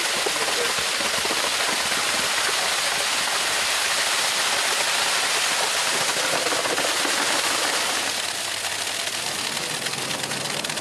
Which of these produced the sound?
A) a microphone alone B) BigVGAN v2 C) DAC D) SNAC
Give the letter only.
A